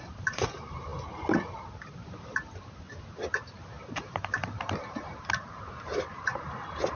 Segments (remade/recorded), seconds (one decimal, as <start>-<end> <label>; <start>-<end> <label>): 0.0-0.9 remade; 0.9-1.8 recorded; 1.8-6.9 remade